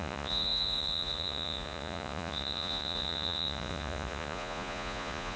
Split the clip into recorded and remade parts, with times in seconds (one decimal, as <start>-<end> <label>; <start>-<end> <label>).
0.0-5.4 remade